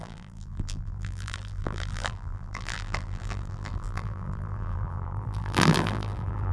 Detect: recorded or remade remade